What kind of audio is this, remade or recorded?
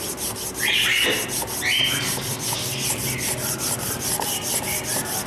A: recorded